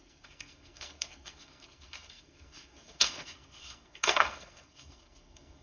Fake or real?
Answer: fake